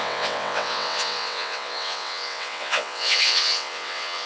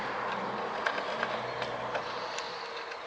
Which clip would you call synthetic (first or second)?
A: first